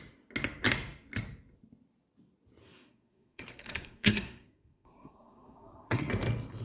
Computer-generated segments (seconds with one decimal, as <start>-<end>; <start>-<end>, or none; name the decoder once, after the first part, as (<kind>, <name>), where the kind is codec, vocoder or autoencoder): 2.6-6.1 (codec, SNAC)